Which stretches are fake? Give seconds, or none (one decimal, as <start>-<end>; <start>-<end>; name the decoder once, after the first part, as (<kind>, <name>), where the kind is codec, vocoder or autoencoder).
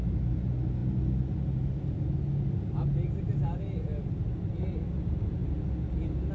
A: none